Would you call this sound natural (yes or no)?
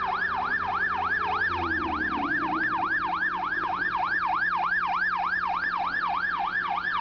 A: yes